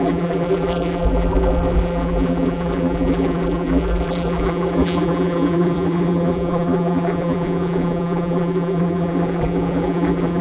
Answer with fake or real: fake